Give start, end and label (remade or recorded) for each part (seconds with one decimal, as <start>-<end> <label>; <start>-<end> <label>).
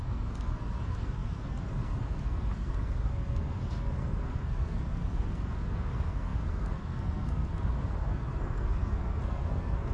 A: 0.0-9.9 remade